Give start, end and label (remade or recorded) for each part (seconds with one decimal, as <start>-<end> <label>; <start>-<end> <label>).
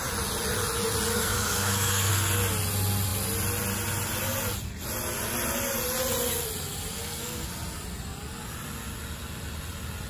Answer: 0.0-1.1 recorded; 1.1-2.1 remade; 2.1-7.0 recorded; 7.0-7.5 remade; 7.5-10.1 recorded